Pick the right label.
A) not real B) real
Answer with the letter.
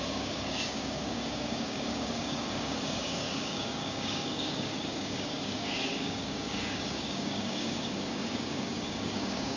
A